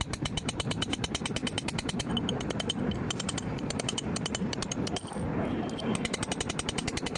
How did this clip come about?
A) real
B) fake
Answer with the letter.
B